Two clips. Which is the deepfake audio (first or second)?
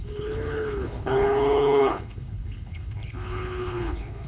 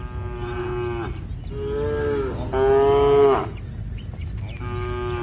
first